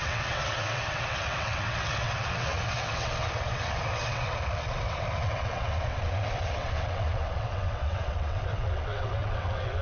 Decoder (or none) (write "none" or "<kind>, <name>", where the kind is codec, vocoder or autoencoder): vocoder, WaveNeXt